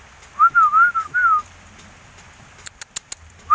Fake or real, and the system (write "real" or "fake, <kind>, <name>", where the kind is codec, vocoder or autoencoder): real